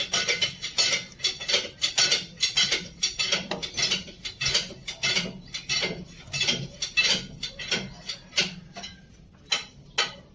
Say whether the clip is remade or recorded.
recorded